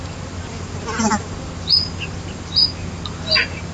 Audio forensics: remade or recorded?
recorded